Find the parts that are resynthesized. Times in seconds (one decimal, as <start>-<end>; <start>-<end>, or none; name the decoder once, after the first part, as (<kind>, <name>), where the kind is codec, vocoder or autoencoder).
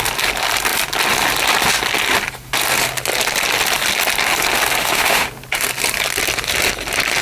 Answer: 4.8-5.3 (autoencoder, DAC-VAE)